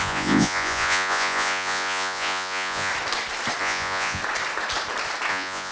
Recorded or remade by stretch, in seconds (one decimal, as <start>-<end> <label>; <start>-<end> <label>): 0.0-2.9 remade; 2.9-3.6 recorded; 3.6-4.2 remade; 4.2-5.3 recorded; 5.3-5.7 remade